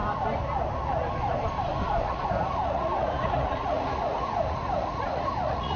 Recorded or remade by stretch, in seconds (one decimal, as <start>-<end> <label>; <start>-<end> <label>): 0.0-2.1 recorded; 2.1-5.8 remade